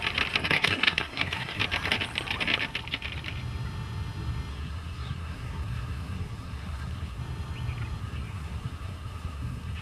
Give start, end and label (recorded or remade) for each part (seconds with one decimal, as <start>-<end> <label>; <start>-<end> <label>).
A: 0.0-0.4 recorded; 0.4-1.6 remade; 1.6-4.5 recorded; 4.5-7.2 remade; 7.2-8.0 recorded; 8.0-9.8 remade